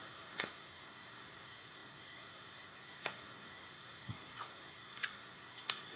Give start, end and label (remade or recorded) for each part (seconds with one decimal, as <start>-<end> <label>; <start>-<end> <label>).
0.0-6.0 remade